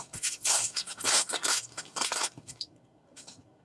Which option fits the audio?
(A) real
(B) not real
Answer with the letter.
B